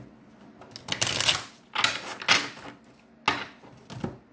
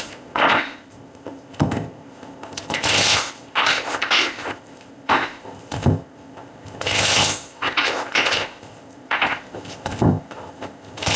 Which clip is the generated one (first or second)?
second